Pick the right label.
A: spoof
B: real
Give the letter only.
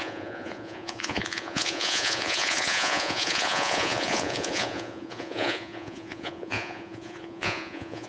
A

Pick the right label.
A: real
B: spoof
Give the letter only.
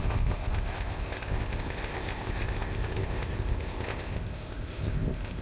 B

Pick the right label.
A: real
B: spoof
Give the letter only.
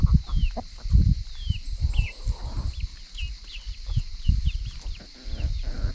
A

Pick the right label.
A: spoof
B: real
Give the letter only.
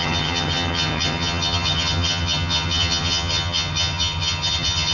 A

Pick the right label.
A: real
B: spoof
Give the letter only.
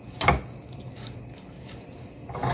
A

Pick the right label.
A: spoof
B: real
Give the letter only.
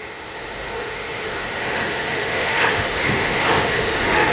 A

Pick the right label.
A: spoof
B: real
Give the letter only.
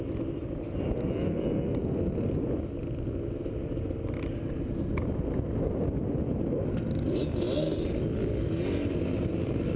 B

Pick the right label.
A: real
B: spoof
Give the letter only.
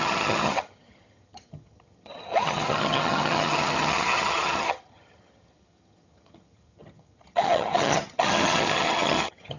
B